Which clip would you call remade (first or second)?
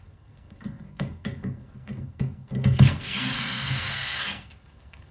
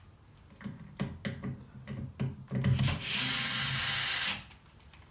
first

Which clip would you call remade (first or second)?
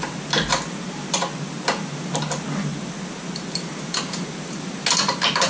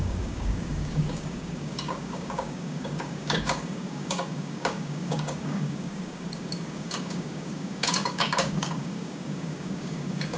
second